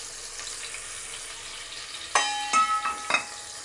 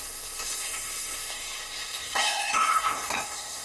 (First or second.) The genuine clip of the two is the first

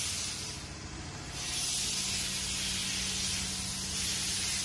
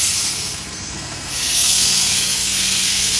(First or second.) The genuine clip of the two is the first